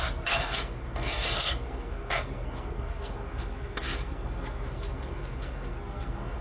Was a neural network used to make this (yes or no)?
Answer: yes